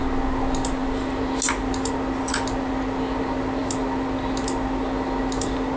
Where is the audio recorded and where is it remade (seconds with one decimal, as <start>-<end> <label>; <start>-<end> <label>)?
0.0-5.8 recorded